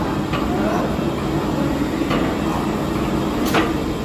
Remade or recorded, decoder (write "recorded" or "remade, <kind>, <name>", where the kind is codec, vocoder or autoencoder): recorded